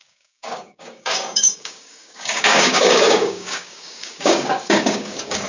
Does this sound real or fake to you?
fake